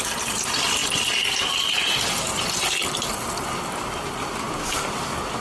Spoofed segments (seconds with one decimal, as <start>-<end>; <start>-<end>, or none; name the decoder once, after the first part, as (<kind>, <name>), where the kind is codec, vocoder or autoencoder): none